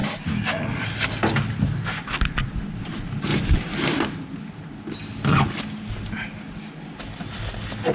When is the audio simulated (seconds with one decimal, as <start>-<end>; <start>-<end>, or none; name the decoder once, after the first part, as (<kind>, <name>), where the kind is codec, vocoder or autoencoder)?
3.3-4.0 (vocoder, BigVGAN v2)